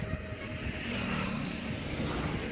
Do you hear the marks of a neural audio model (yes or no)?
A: no